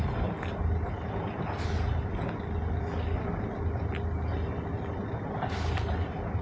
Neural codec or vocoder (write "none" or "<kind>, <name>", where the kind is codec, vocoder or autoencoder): none